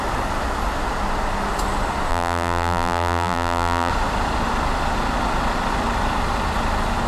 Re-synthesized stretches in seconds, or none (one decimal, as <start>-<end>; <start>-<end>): 2.1-3.9